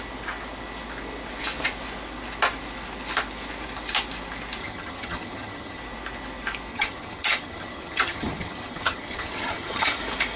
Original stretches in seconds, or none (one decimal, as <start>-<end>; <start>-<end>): 0.0-4.6; 5.8-6.7; 10.0-10.4